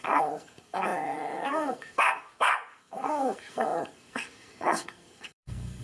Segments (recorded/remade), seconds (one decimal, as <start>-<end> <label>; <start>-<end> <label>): 0.0-5.8 remade